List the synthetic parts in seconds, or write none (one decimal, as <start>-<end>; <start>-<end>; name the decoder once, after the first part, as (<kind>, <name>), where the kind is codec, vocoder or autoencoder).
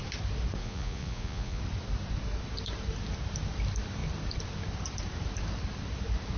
0.6-1.6 (vocoder, Vocos)